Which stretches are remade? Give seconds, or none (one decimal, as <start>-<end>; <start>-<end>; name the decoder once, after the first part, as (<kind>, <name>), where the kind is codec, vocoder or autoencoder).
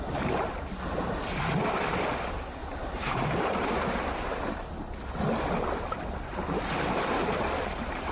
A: 2.6-4.9 (vocoder, BigVGAN v2)